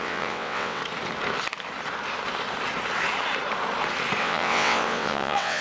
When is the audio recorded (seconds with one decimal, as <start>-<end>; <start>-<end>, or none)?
0.8-4.2